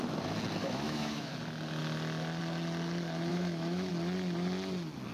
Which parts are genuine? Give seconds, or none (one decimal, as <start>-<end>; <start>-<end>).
0.0-0.6; 1.3-3.3; 3.9-5.1